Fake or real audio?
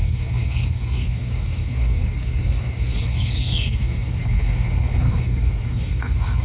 fake